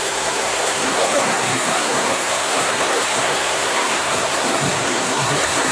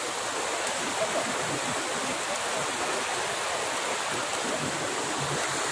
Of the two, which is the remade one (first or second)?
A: first